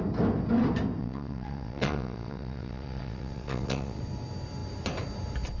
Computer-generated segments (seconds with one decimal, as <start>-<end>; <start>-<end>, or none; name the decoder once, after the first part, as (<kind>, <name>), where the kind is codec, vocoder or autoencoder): 1.0-4.0 (vocoder, WaveNeXt)